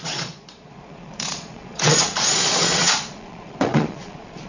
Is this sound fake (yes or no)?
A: yes